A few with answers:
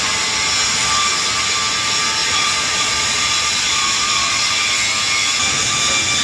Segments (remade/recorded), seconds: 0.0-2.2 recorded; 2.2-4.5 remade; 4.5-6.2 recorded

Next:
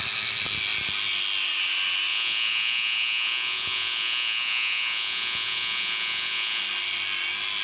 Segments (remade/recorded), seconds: 0.0-2.1 recorded; 2.1-6.6 remade; 6.6-7.6 recorded

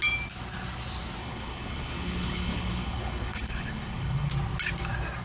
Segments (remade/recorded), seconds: 0.0-1.2 recorded; 1.2-4.3 remade; 4.3-5.2 recorded

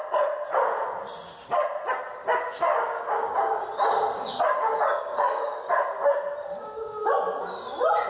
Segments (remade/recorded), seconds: 0.0-2.2 recorded; 2.2-3.9 remade; 3.9-4.9 recorded; 4.9-5.7 remade; 5.7-6.6 recorded; 6.6-7.1 remade; 7.1-8.1 recorded

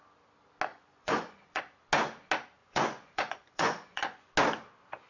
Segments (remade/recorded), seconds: 0.0-0.7 recorded; 0.7-1.6 remade; 1.6-2.6 recorded; 2.6-4.3 remade; 4.3-5.1 recorded

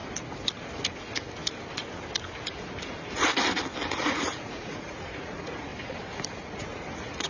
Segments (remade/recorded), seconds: 0.0-3.9 recorded; 3.9-5.7 remade; 5.7-6.3 recorded; 6.3-7.3 remade

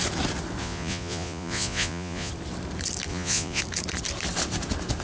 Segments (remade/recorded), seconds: 0.0-0.6 recorded; 0.6-2.3 remade; 2.3-3.1 recorded; 3.1-3.6 remade; 3.6-5.0 recorded

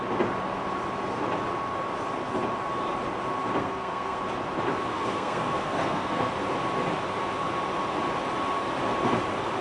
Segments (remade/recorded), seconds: 0.0-3.6 recorded; 3.6-4.2 remade; 4.2-4.9 recorded; 4.9-6.3 remade; 6.3-9.6 recorded